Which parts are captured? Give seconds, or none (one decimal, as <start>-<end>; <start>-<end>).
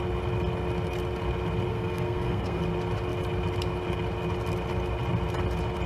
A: 0.0-1.7; 2.6-5.9